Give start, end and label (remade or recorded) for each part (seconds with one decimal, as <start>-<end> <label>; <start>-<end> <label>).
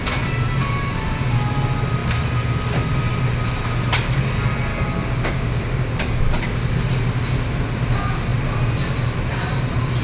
0.0-4.7 recorded; 4.7-6.8 remade; 6.8-10.0 recorded